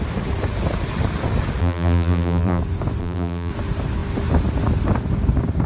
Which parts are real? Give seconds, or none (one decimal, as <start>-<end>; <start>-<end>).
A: 0.0-1.6; 2.6-3.0; 3.5-5.7